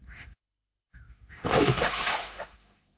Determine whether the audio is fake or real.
fake